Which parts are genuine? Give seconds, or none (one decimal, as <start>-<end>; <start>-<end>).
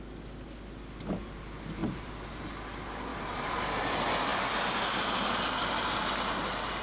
0.0-3.1; 3.8-6.8